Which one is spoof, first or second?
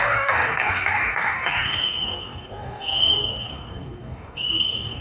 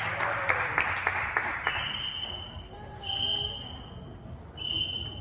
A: first